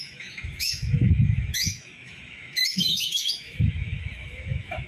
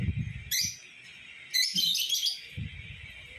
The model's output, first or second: first